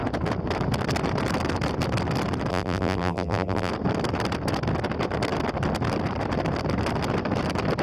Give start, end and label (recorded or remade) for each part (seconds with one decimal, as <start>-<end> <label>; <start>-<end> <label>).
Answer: 0.0-2.5 recorded; 2.5-3.7 remade; 3.7-7.8 recorded